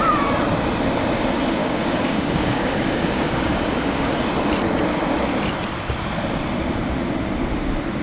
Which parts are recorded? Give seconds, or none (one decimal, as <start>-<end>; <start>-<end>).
0.0-1.6; 4.1-8.0

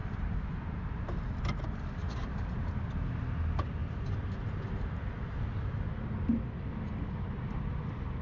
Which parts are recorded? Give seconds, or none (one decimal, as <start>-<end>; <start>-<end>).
0.9-2.0; 2.7-8.2

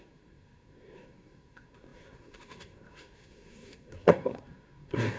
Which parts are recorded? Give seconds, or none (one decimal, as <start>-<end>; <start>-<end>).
none